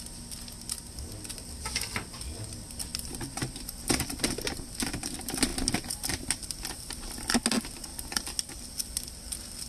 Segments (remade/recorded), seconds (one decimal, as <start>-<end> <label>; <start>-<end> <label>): 0.0-9.7 recorded